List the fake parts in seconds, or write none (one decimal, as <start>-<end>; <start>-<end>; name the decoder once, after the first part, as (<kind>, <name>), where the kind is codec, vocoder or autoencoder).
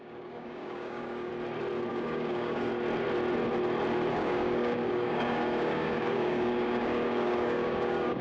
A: 0.0-1.3 (codec, DAC); 1.9-2.7; 4.1-8.2